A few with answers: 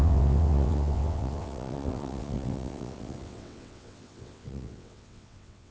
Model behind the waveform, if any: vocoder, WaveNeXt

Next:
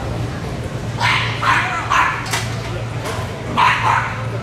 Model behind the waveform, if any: none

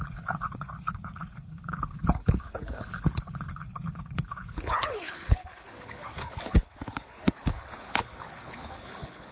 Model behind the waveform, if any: codec, HILCodec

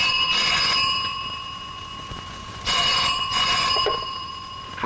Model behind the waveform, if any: vocoder, Vocos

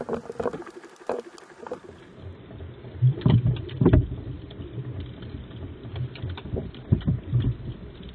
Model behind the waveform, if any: vocoder, BigVGAN v2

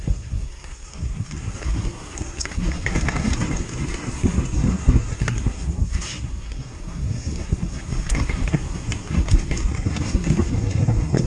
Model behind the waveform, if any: codec, SNAC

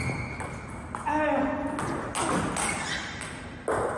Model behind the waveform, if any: none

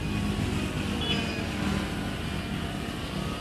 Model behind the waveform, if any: none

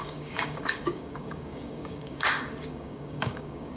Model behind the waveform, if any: codec, DAC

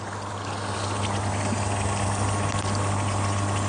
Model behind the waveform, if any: none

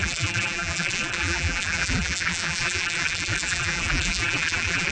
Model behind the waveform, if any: vocoder, BigVGAN v2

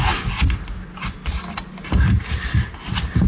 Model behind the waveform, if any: none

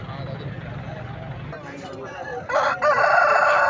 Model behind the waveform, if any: none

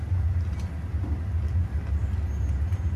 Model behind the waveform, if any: none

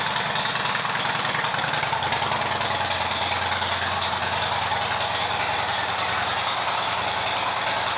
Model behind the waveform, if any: none